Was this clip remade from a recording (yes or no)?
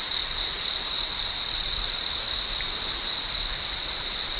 no